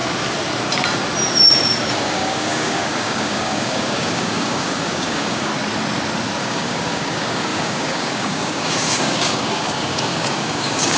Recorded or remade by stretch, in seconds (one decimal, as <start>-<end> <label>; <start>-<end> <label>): 0.0-1.9 recorded; 1.9-5.5 remade; 5.5-6.4 recorded; 6.4-11.0 remade